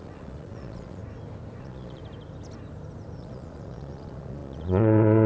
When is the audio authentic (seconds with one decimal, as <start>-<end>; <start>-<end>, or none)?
1.0-1.6; 2.0-3.2